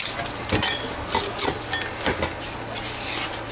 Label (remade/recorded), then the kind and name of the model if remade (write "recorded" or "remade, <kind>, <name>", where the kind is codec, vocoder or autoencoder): recorded